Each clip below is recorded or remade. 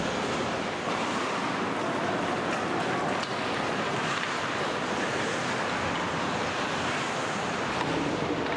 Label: recorded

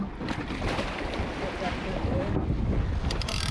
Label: recorded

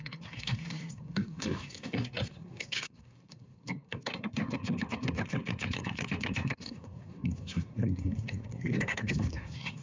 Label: remade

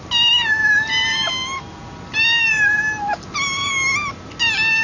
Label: recorded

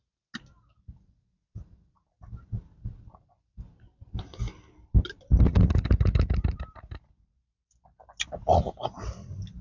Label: recorded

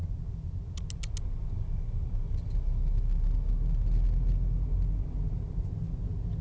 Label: recorded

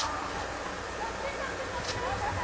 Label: recorded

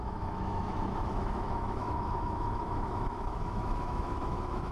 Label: remade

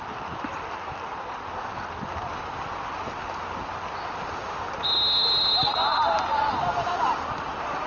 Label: recorded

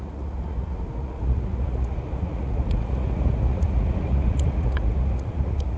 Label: remade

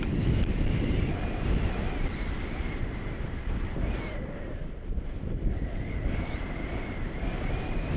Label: recorded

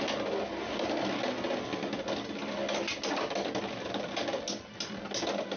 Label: recorded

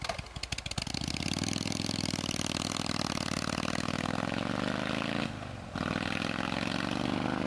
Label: recorded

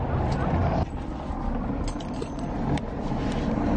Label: recorded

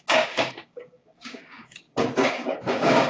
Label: remade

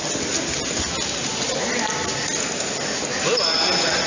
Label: recorded